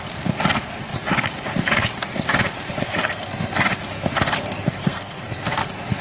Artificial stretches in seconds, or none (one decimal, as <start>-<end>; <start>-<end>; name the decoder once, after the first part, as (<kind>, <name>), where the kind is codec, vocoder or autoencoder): 2.8-3.5 (codec, SNAC); 4.8-5.6